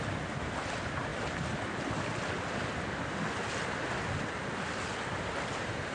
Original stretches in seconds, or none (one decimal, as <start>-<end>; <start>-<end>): 0.0-5.9